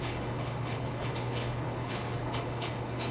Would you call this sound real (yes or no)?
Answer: no